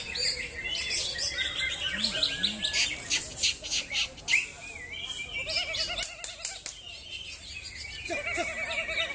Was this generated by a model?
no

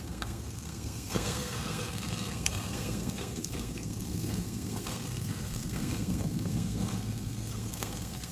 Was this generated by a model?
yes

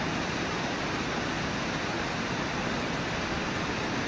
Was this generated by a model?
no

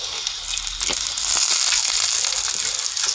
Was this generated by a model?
no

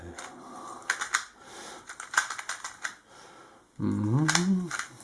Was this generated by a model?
no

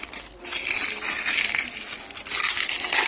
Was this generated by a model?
no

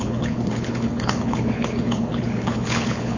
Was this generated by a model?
yes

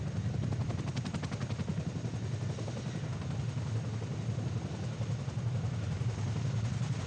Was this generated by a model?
no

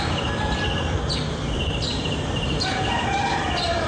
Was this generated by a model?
yes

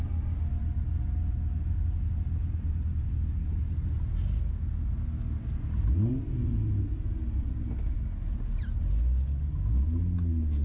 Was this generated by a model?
no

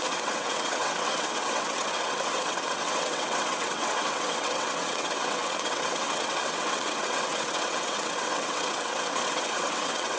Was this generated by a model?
yes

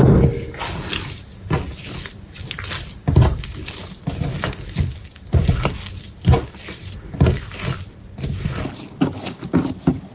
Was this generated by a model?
no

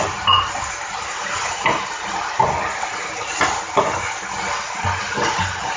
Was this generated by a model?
no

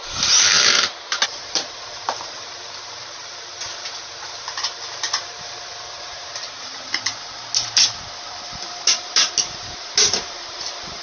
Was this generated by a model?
yes